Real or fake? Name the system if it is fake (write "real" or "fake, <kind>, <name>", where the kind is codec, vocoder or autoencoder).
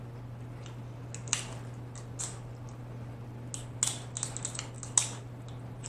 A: real